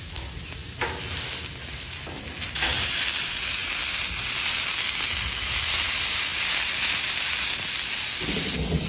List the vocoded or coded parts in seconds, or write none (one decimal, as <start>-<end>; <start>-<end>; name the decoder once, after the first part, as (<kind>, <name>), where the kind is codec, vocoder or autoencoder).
none